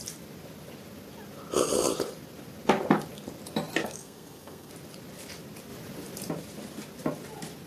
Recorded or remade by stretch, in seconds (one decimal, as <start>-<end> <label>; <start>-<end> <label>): 0.0-3.8 recorded; 3.8-4.7 remade; 4.7-7.7 recorded